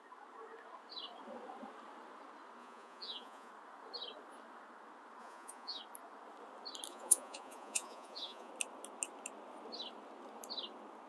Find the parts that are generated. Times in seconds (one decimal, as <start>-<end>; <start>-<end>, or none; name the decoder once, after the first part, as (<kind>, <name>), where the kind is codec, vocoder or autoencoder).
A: 2.6-3.5 (vocoder, Vocos); 5.2-5.8; 6.9-8.5